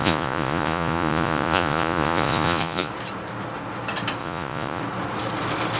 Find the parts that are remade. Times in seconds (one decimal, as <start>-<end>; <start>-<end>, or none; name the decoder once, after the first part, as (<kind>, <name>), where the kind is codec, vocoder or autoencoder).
0.0-2.9 (vocoder, Vocos); 4.2-4.8